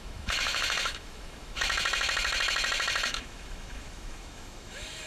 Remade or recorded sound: remade